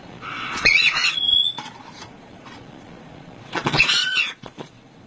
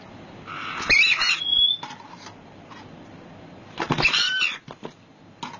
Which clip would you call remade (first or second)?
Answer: first